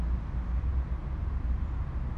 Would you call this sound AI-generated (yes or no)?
no